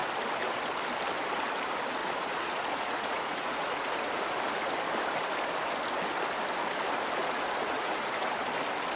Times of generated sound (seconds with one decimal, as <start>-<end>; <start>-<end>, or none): 2.0-4.7; 7.2-8.4